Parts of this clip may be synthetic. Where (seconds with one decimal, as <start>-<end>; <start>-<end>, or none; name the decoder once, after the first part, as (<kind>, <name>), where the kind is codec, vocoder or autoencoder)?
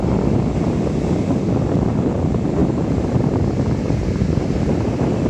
none